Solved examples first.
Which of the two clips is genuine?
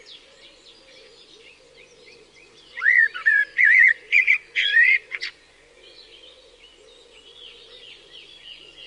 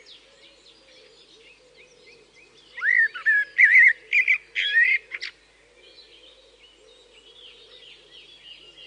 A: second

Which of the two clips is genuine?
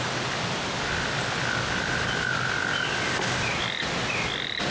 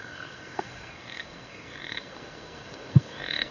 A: first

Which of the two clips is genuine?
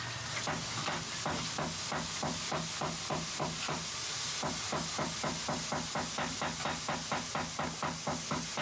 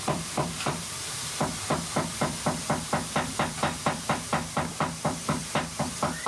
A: first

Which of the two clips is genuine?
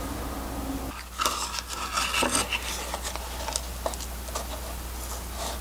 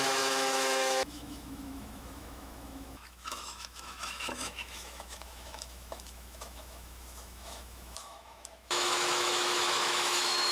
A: first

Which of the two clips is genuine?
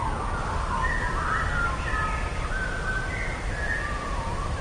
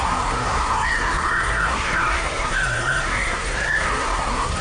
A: first